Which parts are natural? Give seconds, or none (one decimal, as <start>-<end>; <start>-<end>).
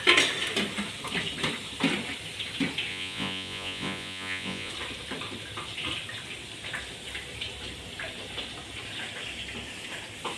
0.0-2.9; 4.7-10.4